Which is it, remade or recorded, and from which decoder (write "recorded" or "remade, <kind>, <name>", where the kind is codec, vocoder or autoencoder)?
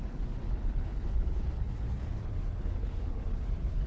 remade, codec, HILCodec